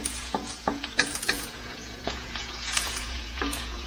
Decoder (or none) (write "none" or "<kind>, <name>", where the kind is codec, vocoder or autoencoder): vocoder, Vocos